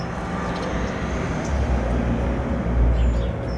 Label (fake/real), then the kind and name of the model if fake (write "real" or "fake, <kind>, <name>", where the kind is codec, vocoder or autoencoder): real